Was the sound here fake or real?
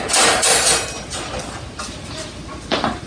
real